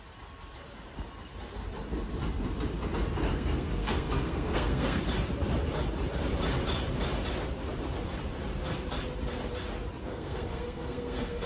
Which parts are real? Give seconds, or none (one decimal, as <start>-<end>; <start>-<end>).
0.0-3.3; 5.0-10.0